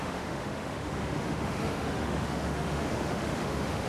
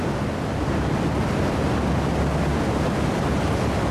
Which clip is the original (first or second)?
second